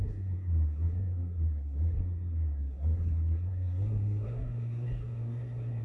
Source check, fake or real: fake